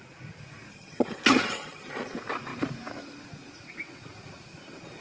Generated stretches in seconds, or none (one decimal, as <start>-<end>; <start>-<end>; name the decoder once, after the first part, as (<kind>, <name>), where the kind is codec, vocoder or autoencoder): 0.7-1.9 (vocoder, HiFi-GAN)